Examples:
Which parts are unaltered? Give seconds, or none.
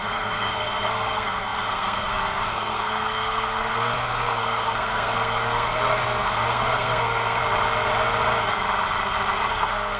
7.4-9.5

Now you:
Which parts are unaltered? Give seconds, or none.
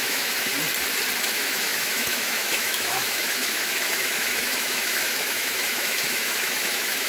0.5-1.2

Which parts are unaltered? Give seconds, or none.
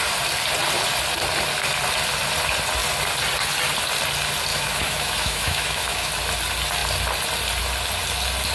0.0-4.5; 6.1-8.5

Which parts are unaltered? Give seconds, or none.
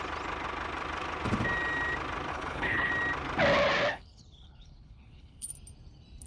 0.0-2.3; 2.9-3.9; 5.5-6.3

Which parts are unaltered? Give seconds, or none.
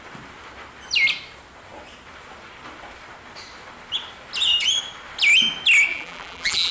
0.0-5.9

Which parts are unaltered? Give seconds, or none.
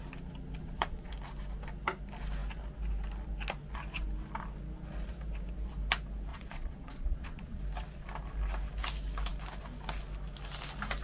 0.0-0.6; 1.1-6.3; 7.6-11.0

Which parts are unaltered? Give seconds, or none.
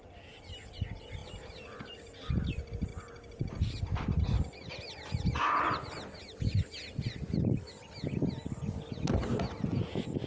0.0-10.3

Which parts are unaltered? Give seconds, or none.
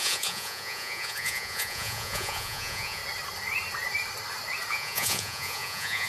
3.0-4.7